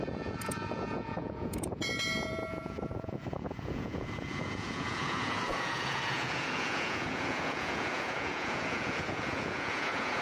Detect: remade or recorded remade